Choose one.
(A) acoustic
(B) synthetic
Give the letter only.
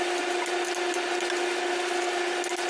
A